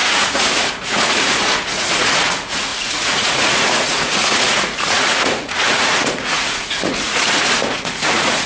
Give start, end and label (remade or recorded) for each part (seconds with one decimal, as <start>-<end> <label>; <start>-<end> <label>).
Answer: 0.0-8.5 remade